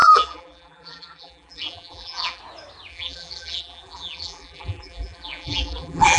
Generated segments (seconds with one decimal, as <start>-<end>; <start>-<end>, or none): 0.0-2.4; 2.9-6.2